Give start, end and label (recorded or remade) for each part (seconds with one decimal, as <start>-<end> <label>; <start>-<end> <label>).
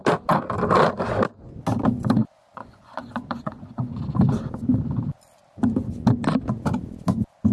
0.0-2.2 recorded; 2.2-4.0 remade; 4.0-7.5 recorded